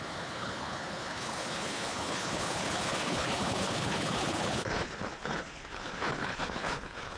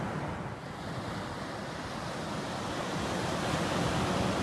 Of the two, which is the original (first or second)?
second